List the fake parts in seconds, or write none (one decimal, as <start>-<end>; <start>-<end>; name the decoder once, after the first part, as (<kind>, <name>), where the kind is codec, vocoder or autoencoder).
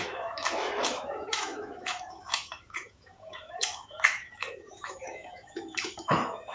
0.0-6.5 (autoencoder, DAC-VAE)